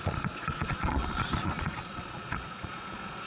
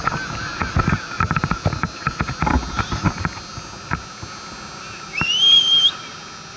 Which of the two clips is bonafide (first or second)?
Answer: second